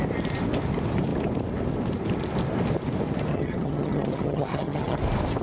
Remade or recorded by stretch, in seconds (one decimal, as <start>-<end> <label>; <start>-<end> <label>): 0.0-3.3 recorded; 3.3-5.0 remade; 5.0-5.4 recorded

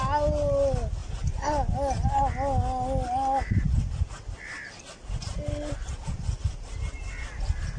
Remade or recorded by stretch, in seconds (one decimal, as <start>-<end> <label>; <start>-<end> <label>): 0.0-7.8 recorded

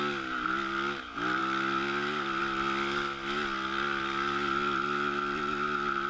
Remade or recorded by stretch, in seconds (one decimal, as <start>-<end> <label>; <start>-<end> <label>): 0.0-6.1 recorded

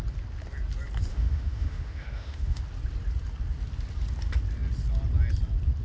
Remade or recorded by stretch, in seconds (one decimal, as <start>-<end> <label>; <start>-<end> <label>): 0.0-1.1 recorded; 1.1-2.6 remade; 2.6-5.8 recorded

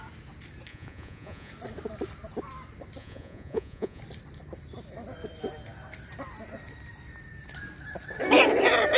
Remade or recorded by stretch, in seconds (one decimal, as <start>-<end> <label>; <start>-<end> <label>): 0.0-0.7 recorded; 0.7-1.5 remade; 1.5-3.0 recorded; 3.0-4.0 remade; 4.0-9.0 recorded

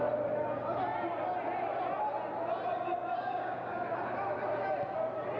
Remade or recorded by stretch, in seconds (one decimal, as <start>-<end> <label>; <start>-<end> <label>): 0.0-3.2 recorded; 3.2-3.8 remade; 3.8-5.4 recorded